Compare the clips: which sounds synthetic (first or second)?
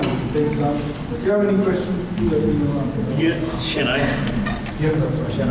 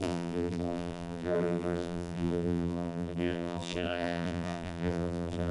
second